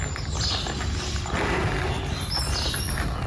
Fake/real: real